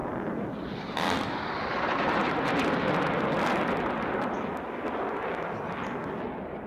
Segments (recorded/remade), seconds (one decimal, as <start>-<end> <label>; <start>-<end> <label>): 0.0-6.7 recorded